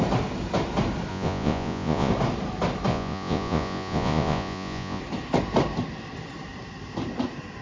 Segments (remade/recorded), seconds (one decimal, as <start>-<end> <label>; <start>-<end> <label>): 0.0-1.1 recorded; 1.1-2.1 remade; 2.1-2.9 recorded; 2.9-5.0 remade; 5.0-7.6 recorded